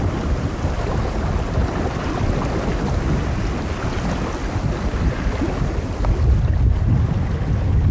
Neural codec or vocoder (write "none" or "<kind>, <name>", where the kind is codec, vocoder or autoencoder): none